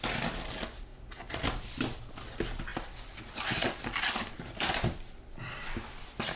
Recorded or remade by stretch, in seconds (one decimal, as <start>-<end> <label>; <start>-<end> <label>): 0.0-6.4 recorded